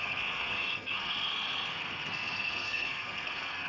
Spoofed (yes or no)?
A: yes